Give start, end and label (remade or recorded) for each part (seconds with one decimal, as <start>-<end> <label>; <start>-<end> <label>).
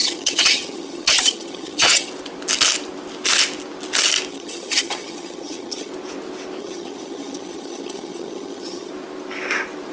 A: 0.0-2.1 remade; 2.1-4.3 recorded; 4.3-5.9 remade; 5.9-6.6 recorded; 6.6-8.9 remade; 8.9-9.9 recorded